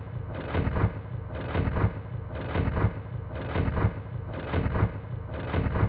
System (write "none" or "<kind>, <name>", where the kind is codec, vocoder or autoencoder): none